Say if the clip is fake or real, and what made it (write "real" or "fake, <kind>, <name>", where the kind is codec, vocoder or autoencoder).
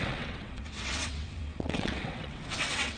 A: fake, vocoder, WaveNeXt